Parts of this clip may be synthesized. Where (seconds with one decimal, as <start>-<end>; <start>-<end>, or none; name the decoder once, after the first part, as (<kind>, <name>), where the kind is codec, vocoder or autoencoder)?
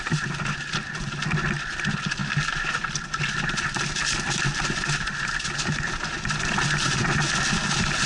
none